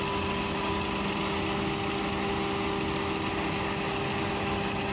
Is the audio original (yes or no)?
yes